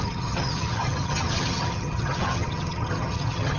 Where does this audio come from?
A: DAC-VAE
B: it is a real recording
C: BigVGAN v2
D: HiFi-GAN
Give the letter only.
D